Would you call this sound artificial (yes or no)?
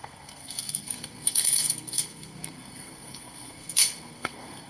yes